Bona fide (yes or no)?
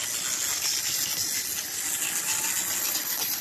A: yes